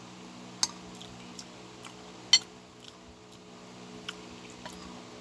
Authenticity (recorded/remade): recorded